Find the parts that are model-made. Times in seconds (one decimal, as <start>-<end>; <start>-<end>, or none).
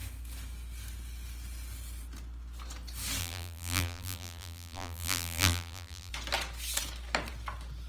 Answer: 3.2-6.1